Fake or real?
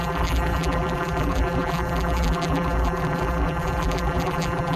fake